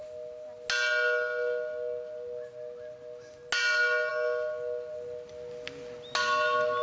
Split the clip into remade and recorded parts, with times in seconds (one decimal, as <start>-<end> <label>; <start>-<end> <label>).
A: 0.0-6.8 recorded